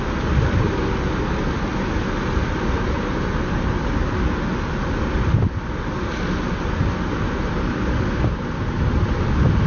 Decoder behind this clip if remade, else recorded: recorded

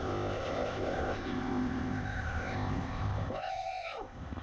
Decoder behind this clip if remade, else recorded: remade, codec, ZipCodec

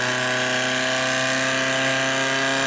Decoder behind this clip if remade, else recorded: recorded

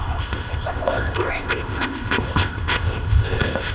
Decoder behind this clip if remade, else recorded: remade, codec, ZipCodec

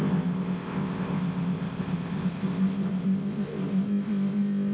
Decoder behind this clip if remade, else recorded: remade, codec, ZipCodec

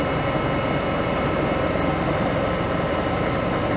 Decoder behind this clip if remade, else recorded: recorded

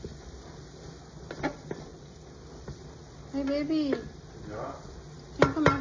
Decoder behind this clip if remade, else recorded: recorded